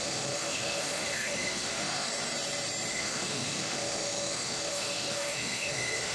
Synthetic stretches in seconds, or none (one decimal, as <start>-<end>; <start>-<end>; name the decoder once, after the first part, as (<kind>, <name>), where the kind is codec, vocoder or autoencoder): 0.0-2.1 (autoencoder, DAC-VAE); 2.9-6.1